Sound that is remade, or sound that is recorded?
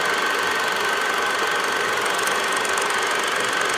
recorded